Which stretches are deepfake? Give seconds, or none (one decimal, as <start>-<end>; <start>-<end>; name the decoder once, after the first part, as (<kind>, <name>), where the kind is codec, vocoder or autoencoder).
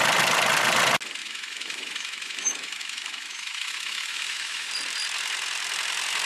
1.2-4.7 (autoencoder, DAC-VAE)